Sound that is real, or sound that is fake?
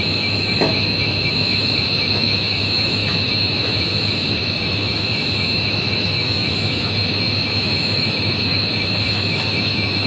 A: fake